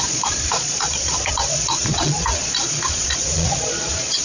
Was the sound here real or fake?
fake